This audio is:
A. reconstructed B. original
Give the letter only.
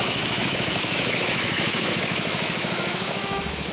A